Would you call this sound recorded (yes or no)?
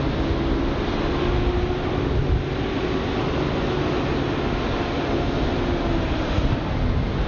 yes